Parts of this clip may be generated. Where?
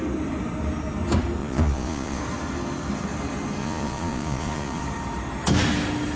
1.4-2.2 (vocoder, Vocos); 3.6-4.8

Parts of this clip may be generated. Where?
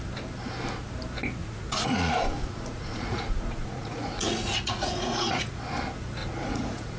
1.4-5.6 (vocoder, Vocos); 6.2-7.0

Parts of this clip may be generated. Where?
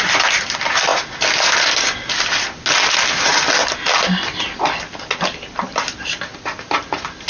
none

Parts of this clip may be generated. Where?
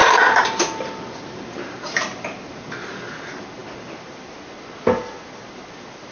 0.0-2.0 (vocoder, BigVGAN v2)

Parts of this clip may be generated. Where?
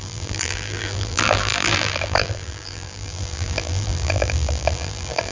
0.0-5.3 (vocoder, BigVGAN v2)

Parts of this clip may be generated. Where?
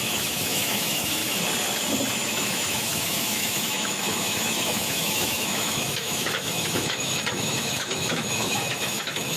0.0-1.2 (autoencoder, DAC-VAE); 2.1-9.4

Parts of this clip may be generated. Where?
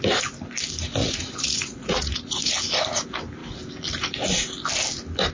1.0-2.5 (vocoder, Vocos)